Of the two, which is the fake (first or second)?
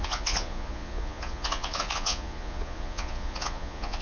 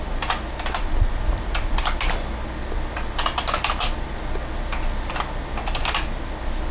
first